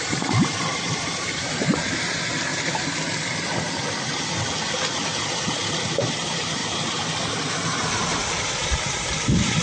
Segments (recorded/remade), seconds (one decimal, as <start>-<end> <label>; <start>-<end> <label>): 0.0-2.5 remade; 2.5-5.7 recorded; 5.7-9.6 remade